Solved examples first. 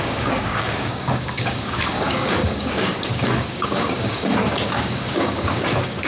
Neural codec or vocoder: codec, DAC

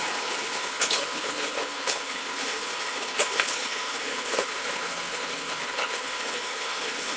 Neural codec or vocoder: codec, HILCodec